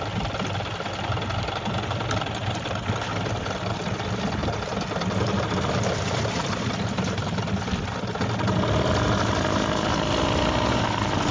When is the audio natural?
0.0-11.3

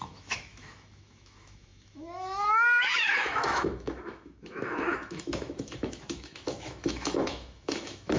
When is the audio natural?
none

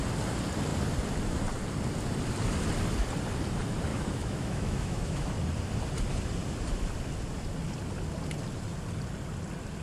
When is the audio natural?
0.0-3.9; 5.3-9.8